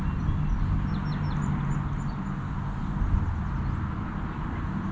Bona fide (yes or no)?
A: yes